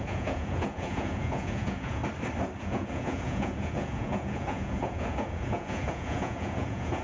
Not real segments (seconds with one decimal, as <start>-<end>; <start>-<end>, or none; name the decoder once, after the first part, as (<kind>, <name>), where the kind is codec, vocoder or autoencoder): 0.0-2.0 (vocoder, Vocos); 2.6-7.0